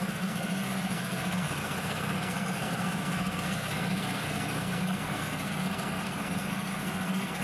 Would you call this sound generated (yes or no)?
yes